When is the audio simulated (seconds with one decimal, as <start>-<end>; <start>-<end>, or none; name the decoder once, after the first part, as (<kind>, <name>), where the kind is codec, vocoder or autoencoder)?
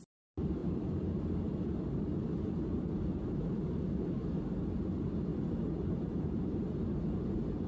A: 0.6-1.2 (vocoder, BigVGAN v2); 2.2-4.4; 5.3-6.6